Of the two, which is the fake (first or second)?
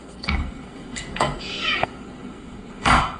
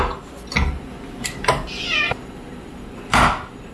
first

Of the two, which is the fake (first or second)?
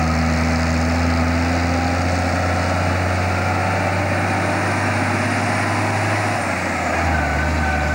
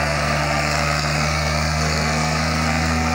second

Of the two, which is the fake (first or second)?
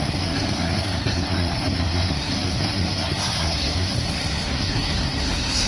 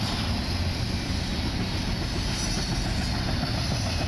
first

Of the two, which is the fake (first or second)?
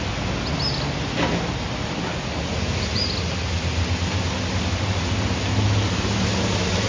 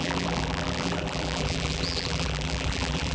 second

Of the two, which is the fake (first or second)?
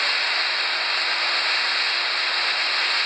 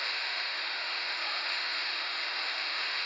second